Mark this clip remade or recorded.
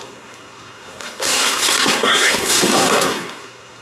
remade